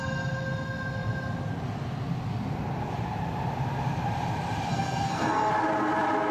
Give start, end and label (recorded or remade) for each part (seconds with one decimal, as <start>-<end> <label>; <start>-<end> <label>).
0.0-4.7 recorded; 4.7-5.5 remade; 5.5-6.3 recorded